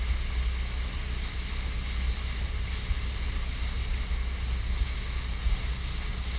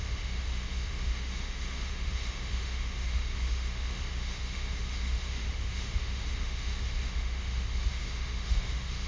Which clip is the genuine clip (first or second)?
first